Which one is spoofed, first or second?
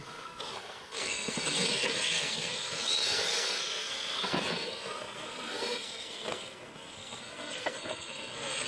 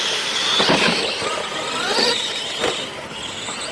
first